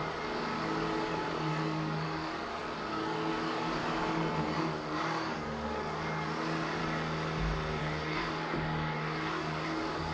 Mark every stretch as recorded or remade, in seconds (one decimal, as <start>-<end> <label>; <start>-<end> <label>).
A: 0.0-0.6 recorded; 0.6-3.8 remade; 3.8-4.6 recorded; 4.6-6.8 remade; 6.8-7.8 recorded; 7.8-10.1 remade